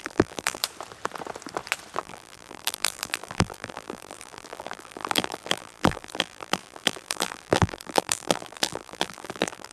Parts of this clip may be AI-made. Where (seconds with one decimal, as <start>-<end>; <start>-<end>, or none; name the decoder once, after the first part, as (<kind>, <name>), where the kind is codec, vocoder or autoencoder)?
0.0-0.6 (vocoder, BigVGAN v2); 2.0-9.7